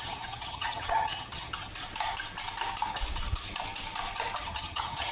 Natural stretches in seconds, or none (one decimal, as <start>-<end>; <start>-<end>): 1.7-4.4